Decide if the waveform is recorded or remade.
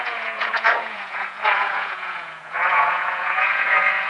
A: remade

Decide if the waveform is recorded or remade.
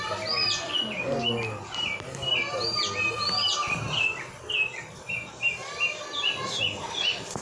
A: recorded